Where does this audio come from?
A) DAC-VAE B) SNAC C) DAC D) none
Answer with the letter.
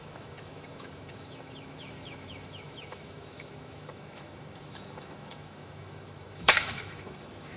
A